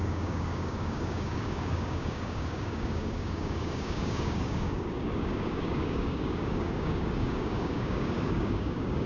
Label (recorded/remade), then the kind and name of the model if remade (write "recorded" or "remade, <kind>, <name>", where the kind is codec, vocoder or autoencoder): remade, codec, DAC